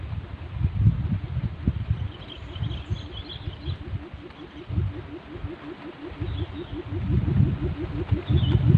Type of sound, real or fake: real